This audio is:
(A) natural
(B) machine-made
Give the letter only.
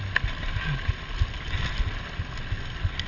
A